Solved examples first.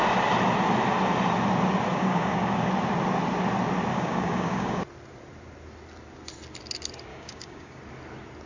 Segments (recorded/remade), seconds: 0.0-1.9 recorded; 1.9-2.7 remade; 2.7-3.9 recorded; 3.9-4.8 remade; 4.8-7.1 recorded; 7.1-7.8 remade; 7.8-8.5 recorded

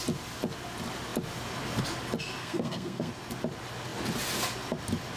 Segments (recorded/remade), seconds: 0.0-2.4 recorded; 2.4-3.1 remade; 3.1-5.2 recorded

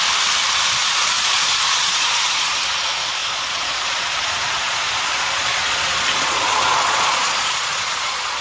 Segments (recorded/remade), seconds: 0.0-0.8 recorded; 0.8-2.6 remade; 2.6-3.2 recorded; 3.2-8.4 remade

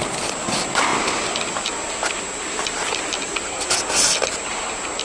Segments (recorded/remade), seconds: 0.0-5.0 recorded

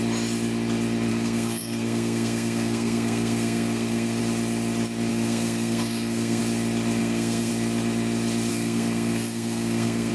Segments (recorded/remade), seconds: 0.0-1.1 recorded; 1.1-4.2 remade; 4.2-5.1 recorded; 5.1-6.4 remade; 6.4-7.0 recorded; 7.0-7.5 remade; 7.5-8.5 recorded; 8.5-10.1 remade

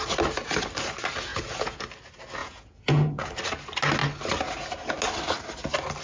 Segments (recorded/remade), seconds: 0.0-1.3 recorded; 1.3-1.8 remade; 1.8-2.4 recorded; 2.4-3.3 remade; 3.3-6.0 recorded

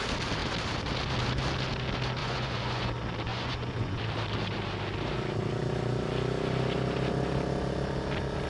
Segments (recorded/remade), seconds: 0.0-2.2 recorded; 2.2-2.9 remade; 2.9-3.3 recorded; 3.3-4.0 remade; 4.0-8.5 recorded

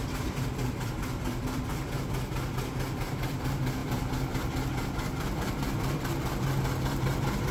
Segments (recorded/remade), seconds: 0.0-1.7 remade; 1.7-3.0 recorded; 3.0-7.5 remade